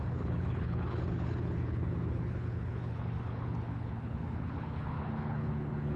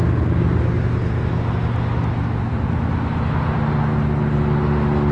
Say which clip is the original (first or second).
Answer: second